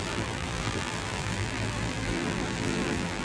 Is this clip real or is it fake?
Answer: fake